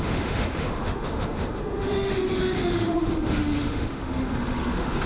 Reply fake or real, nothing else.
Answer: fake